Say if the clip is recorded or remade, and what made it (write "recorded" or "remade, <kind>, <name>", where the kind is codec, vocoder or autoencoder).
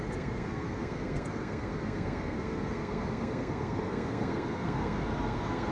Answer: remade, codec, SNAC